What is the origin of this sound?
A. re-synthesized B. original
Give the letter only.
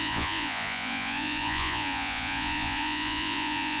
A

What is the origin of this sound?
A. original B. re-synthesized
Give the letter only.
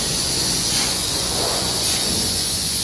B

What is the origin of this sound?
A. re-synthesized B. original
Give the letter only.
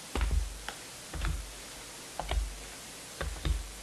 B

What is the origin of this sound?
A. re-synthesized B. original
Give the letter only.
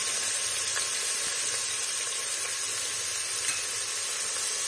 B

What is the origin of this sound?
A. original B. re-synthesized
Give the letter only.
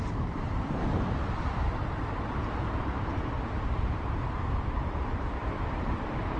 B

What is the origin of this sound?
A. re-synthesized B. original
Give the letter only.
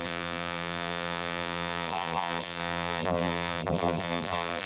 A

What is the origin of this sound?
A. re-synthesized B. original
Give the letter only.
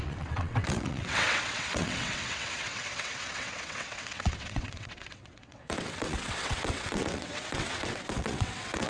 A